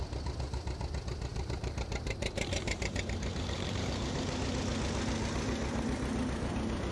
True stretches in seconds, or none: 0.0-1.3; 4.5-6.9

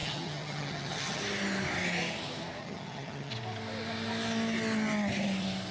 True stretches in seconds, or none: 1.2-2.6; 3.3-5.7

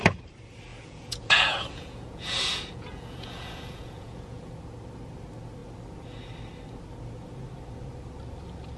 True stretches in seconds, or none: 0.0-0.7; 4.5-8.8